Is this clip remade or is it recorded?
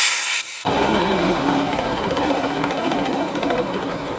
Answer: remade